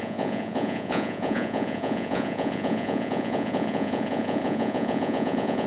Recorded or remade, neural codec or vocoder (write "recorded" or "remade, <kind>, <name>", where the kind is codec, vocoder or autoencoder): remade, vocoder, Vocos